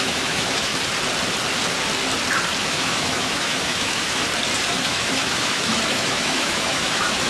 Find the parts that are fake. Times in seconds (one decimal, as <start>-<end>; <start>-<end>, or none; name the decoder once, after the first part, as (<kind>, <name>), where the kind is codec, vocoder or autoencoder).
0.0-0.7 (autoencoder, DAC-VAE); 2.6-4.2; 4.8-7.3

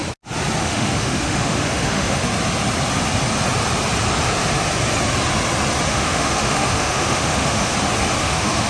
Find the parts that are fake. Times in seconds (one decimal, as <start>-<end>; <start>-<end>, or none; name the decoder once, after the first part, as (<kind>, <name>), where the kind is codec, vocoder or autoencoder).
0.6-2.2 (autoencoder, DAC-VAE); 5.9-7.7; 8.2-8.7